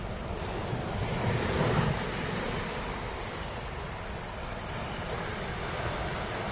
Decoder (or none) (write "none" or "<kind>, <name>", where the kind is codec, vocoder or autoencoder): none